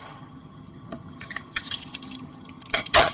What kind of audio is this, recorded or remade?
remade